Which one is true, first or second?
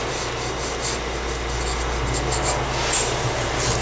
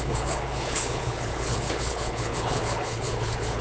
first